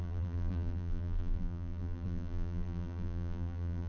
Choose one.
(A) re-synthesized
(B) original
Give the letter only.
A